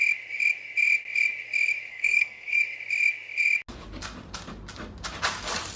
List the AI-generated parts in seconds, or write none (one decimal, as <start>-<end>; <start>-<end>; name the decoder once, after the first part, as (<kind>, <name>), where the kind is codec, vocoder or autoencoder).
1.9-2.6 (codec, SNAC)